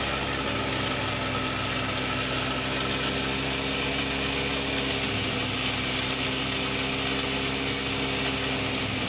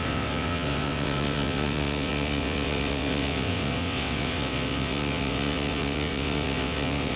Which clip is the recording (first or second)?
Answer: first